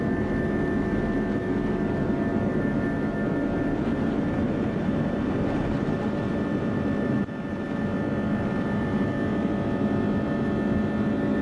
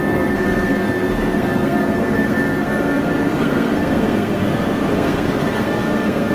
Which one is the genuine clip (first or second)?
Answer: first